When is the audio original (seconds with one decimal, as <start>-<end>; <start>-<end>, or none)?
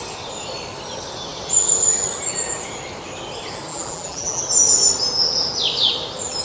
0.0-3.7; 4.4-6.4